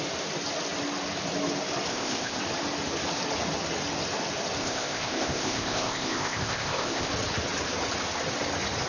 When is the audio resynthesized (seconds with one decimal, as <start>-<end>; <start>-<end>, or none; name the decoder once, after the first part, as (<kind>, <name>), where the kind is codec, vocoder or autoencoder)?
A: 1.9-2.4 (codec, ZipCodec); 4.6-7.1

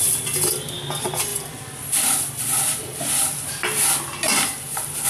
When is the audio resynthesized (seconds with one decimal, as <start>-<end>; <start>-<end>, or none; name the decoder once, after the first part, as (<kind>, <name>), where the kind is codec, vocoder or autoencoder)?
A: none

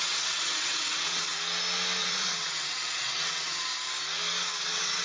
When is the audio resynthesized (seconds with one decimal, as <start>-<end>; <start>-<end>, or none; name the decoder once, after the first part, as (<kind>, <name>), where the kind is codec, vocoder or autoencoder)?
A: 0.0-1.3 (vocoder, WaveNeXt); 2.0-3.7; 4.6-5.0

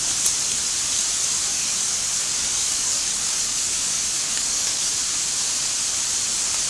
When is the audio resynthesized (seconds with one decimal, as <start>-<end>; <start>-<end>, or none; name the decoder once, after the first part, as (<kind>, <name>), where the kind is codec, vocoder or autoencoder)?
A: 1.5-4.9 (codec, DAC)

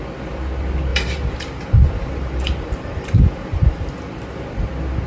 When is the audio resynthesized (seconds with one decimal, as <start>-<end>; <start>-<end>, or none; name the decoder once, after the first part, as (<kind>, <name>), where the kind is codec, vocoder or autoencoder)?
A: 0.9-4.0 (vocoder, BigVGAN v2)

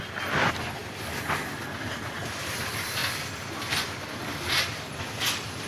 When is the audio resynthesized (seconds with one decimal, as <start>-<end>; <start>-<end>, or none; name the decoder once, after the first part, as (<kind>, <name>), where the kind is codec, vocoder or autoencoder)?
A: none